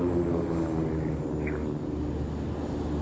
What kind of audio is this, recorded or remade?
recorded